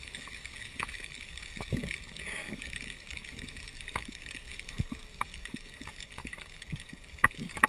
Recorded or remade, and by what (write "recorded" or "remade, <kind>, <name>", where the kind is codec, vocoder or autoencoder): remade, codec, DAC